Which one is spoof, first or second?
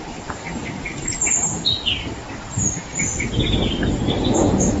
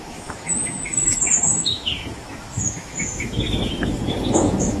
second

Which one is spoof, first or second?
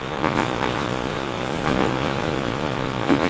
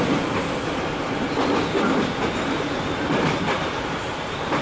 first